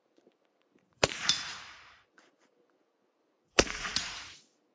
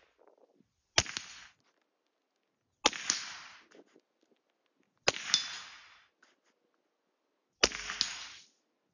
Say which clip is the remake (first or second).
first